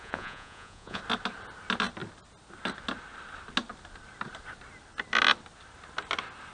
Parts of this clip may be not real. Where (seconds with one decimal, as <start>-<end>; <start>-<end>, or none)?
0.0-1.0